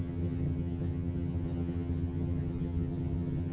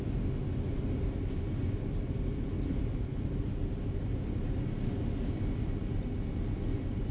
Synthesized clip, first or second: first